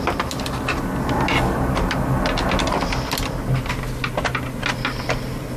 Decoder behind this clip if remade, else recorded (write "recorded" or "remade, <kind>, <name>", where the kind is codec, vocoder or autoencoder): recorded